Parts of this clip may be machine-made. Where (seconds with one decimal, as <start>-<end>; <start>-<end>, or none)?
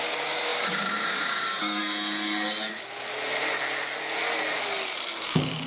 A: 0.0-1.8; 5.2-5.7